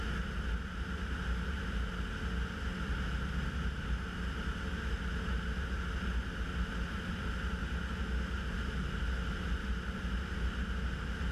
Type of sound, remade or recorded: recorded